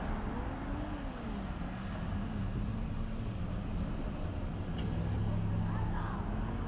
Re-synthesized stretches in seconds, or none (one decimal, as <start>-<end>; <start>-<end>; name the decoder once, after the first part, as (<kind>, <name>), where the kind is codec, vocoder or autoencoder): none